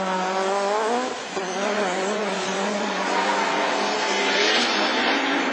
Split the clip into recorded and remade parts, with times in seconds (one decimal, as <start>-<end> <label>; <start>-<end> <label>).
0.0-1.2 recorded; 1.2-3.7 remade; 3.7-5.5 recorded